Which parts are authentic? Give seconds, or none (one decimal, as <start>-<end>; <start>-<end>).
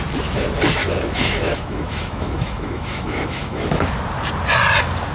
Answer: 0.0-0.8; 3.9-5.1